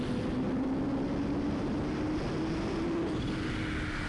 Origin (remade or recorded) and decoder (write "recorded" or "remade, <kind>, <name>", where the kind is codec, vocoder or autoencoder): recorded